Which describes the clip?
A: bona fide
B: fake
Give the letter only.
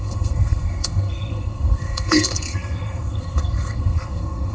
B